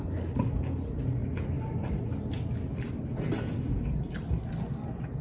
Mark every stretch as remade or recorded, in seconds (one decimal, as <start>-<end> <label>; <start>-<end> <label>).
0.0-5.2 recorded